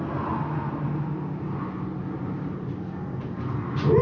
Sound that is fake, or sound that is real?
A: real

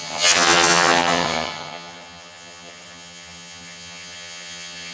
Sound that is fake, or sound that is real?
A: fake